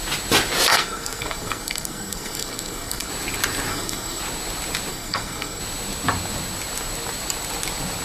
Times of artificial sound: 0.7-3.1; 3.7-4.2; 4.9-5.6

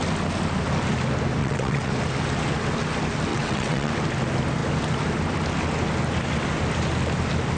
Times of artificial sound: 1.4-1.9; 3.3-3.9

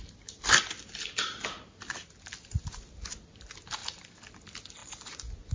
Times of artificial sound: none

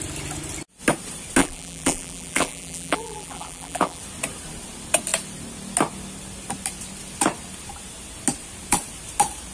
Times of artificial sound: 1.4-4.0